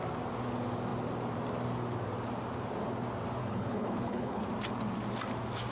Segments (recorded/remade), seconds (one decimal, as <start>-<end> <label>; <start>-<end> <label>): 0.0-3.4 recorded; 3.4-4.4 remade; 4.4-5.7 recorded